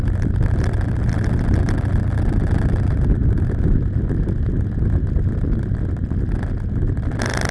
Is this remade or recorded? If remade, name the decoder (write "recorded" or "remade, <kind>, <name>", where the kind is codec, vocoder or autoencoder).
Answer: recorded